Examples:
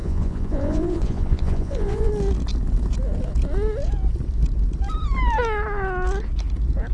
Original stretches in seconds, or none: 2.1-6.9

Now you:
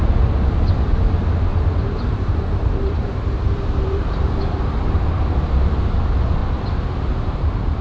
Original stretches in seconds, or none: 0.0-1.5; 5.3-6.4

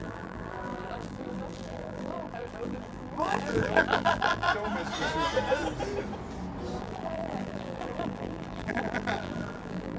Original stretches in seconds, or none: 4.5-6.8

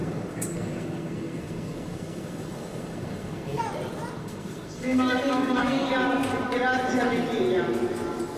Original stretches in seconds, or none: 3.6-4.2; 5.9-8.4

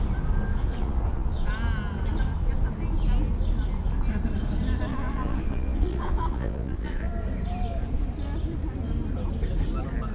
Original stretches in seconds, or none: 0.0-0.5; 1.5-4.9; 7.1-10.1